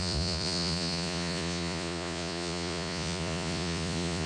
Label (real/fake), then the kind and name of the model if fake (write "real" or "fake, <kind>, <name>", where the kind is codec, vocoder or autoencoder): fake, vocoder, Vocos